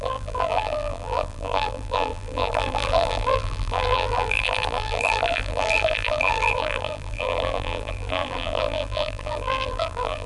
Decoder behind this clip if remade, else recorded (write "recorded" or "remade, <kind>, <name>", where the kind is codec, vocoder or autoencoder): remade, vocoder, BigVGAN v2